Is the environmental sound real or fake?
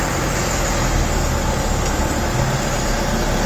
real